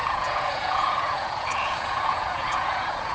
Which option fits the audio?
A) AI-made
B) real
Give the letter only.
A